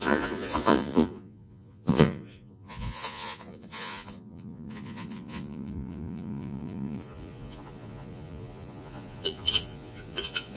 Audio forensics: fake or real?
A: fake